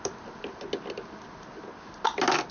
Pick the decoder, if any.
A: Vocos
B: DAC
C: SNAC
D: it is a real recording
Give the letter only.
D